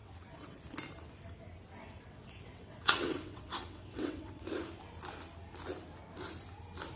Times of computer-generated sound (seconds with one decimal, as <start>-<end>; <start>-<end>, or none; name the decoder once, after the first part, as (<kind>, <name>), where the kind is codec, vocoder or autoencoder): 0.0-0.6 (vocoder, WaveNeXt); 1.8-4.5